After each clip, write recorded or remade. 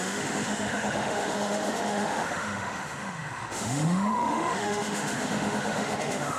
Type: remade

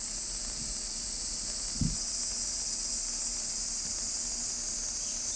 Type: recorded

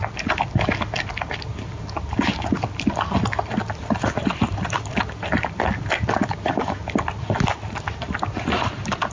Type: recorded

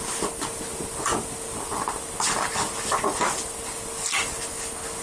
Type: recorded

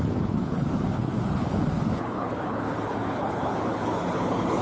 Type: remade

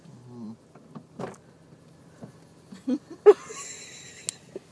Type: recorded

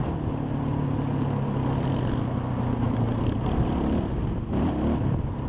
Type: recorded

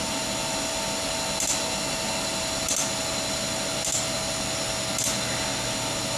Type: recorded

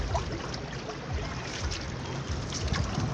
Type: recorded